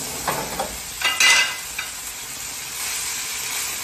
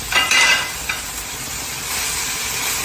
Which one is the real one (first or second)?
first